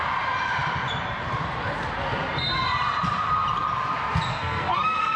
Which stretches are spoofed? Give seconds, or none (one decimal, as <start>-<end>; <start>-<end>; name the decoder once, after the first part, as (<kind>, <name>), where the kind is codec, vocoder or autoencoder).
4.3-5.2 (codec, SNAC)